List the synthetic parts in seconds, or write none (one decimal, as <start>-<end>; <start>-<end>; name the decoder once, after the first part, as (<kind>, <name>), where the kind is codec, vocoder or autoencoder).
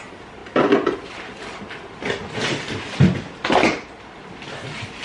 none